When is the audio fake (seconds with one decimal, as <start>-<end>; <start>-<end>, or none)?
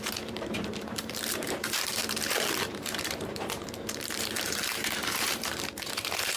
0.0-2.0; 2.6-6.4